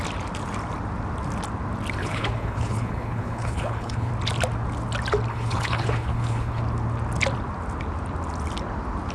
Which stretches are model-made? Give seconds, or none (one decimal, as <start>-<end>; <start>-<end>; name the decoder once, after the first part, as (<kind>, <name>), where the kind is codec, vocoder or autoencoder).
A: 2.0-4.1 (codec, HILCodec); 5.3-6.6